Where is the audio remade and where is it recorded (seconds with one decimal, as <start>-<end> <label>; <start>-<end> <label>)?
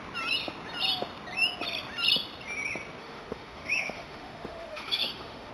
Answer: 0.0-3.0 recorded; 3.0-5.5 remade